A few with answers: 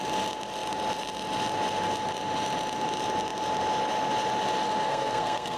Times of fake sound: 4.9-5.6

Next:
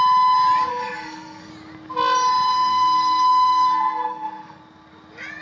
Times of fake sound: 0.7-1.5; 2.5-4.6

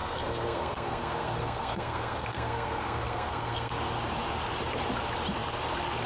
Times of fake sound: 0.0-3.7

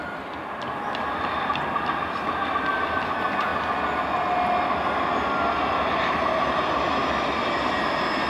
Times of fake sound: none

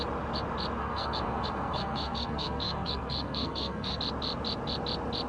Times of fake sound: 0.8-4.0

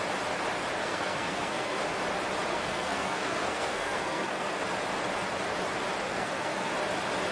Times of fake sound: 0.8-1.8; 2.5-4.6; 6.1-6.7

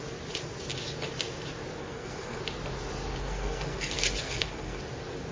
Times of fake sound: 1.8-2.4; 3.2-4.8